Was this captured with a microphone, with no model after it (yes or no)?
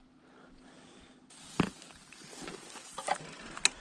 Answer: yes